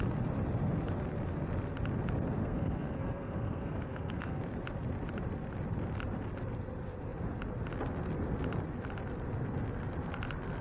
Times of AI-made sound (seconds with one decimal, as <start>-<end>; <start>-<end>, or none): 2.4-4.4